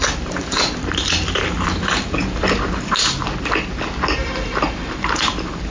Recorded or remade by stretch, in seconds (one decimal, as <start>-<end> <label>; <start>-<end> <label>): 0.0-3.0 remade; 3.0-4.2 recorded; 4.2-5.7 remade